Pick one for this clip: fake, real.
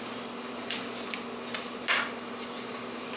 real